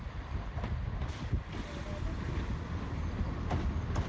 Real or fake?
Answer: real